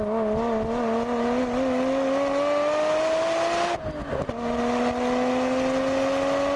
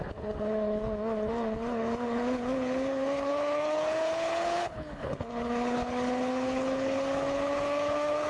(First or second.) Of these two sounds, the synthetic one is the second